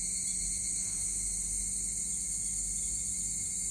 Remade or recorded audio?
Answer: recorded